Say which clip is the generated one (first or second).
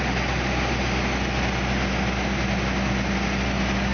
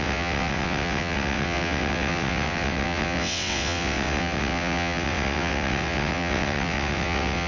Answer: second